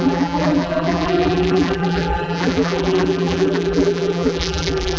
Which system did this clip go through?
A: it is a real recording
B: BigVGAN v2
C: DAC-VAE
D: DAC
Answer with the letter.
B